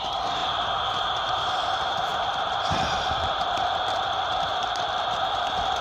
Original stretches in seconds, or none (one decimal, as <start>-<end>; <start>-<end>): 0.0-2.1